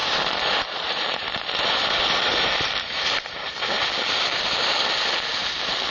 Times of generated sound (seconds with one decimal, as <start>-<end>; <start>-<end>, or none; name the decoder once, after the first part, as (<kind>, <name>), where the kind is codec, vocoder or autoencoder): 0.0-3.5 (vocoder, BigVGAN v2)